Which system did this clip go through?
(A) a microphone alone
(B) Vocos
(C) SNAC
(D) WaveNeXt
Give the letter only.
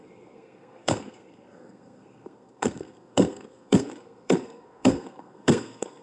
C